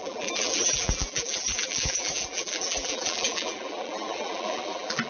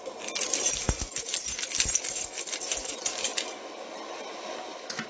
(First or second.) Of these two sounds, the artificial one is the first